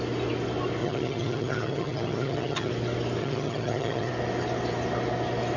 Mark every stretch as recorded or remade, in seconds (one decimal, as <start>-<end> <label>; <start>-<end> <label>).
0.0-0.8 recorded; 0.8-2.7 remade; 2.7-3.2 recorded; 3.2-4.1 remade; 4.1-5.6 recorded